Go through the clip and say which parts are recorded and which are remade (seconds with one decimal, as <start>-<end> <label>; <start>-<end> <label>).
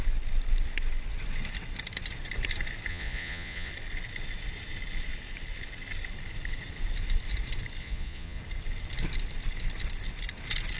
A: 0.0-2.9 recorded; 2.9-3.7 remade; 3.7-7.8 recorded; 7.8-8.4 remade; 8.4-10.8 recorded